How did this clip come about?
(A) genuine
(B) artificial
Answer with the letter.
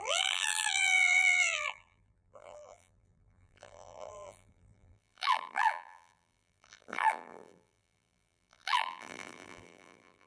B